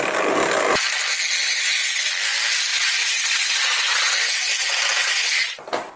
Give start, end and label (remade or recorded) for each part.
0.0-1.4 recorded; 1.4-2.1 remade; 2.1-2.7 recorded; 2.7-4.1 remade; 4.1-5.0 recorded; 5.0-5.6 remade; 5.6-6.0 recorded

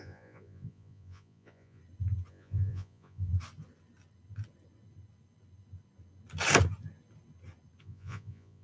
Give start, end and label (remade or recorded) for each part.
0.0-1.8 remade; 1.8-2.3 recorded; 2.3-3.3 remade; 3.3-7.8 recorded; 7.8-8.6 remade

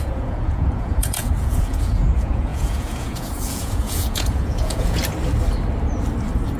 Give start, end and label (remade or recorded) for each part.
0.0-5.0 remade; 5.0-6.6 recorded

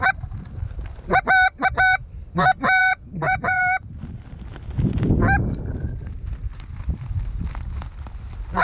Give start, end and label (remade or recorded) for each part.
0.0-2.8 recorded; 2.8-3.6 remade; 3.6-8.6 recorded

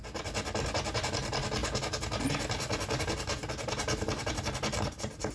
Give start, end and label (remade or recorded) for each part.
0.0-5.3 recorded

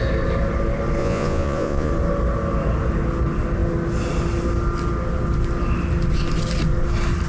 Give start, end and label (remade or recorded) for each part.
0.0-1.0 recorded; 1.0-1.9 remade; 1.9-7.3 recorded

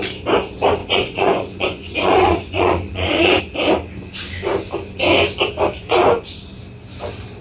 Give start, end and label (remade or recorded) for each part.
0.0-0.8 recorded; 0.8-3.4 remade; 3.4-5.8 recorded; 5.8-6.4 remade; 6.4-7.4 recorded

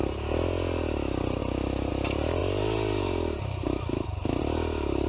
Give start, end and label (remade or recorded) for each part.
0.0-5.1 recorded